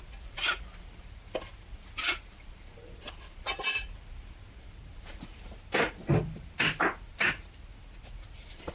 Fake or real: real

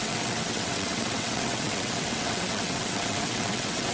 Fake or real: fake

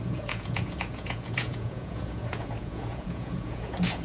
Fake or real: fake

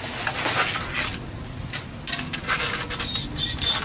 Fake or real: real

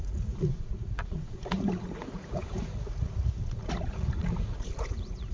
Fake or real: fake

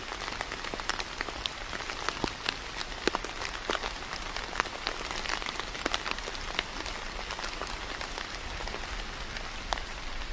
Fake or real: real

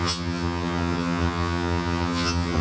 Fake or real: fake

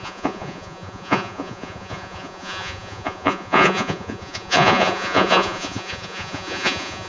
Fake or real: fake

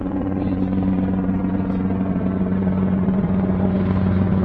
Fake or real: fake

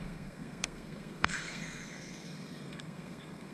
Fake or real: fake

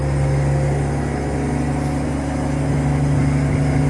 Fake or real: real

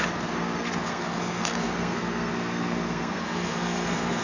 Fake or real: fake